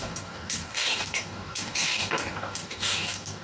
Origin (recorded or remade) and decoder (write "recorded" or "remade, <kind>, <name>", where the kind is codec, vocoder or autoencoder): remade, codec, DAC